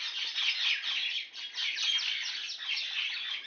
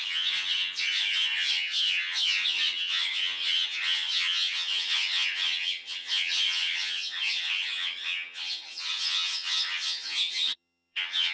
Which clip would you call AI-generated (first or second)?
second